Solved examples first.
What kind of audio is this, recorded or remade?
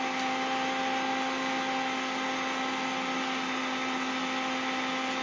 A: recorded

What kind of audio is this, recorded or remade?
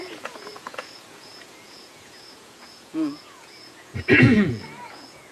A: remade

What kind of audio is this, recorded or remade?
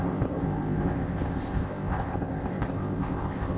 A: remade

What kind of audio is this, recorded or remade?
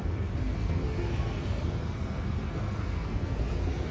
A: remade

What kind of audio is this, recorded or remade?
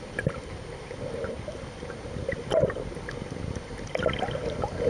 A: recorded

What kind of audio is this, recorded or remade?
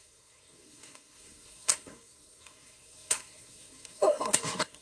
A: remade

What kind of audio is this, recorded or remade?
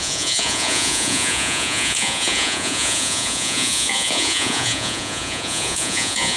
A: remade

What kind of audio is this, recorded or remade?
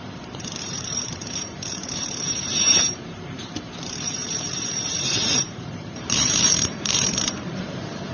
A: remade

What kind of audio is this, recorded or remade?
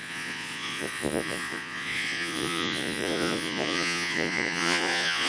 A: remade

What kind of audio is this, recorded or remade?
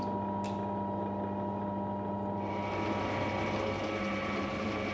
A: recorded